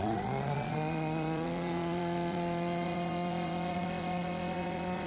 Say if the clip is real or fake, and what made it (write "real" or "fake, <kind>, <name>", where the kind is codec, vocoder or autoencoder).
fake, vocoder, Vocos